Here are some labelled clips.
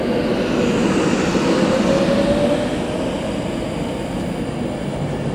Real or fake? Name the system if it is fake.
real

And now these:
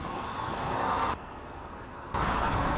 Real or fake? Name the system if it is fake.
fake, codec, SNAC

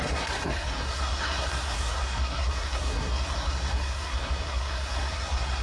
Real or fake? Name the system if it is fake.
fake, codec, SNAC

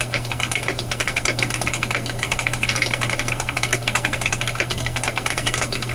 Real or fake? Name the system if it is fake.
fake, codec, SNAC